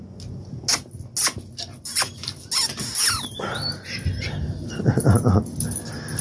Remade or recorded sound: recorded